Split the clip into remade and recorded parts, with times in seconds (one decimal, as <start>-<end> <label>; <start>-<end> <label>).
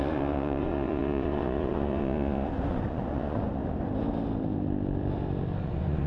0.0-3.6 remade; 3.6-5.6 recorded; 5.6-6.1 remade